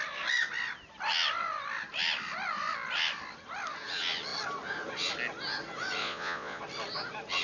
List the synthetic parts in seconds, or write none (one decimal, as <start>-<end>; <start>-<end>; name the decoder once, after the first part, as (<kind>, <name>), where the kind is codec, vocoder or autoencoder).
6.0-6.6 (vocoder, Vocos)